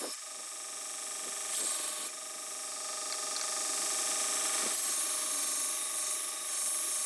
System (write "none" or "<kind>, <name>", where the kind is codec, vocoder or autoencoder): none